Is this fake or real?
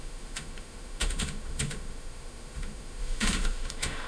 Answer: fake